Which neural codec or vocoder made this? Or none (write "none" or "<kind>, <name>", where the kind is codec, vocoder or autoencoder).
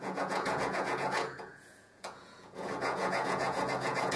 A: vocoder, Vocos